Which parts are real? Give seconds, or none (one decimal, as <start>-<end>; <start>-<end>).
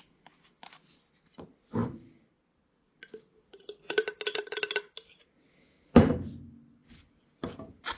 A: 0.0-8.0